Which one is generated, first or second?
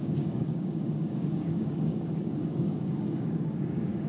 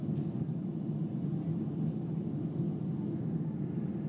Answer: first